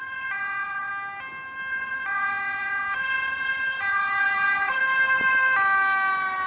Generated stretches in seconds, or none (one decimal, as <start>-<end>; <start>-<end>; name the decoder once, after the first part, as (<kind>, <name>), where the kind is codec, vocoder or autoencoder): 0.0-0.9 (vocoder, Vocos); 1.7-4.8